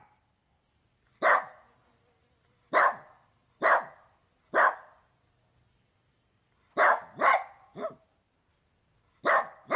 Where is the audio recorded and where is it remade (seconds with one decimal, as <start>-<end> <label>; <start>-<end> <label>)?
0.0-9.8 recorded